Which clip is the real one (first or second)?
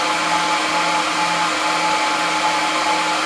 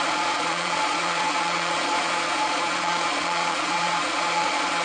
first